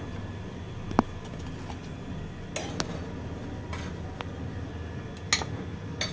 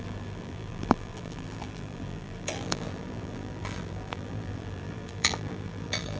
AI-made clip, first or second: second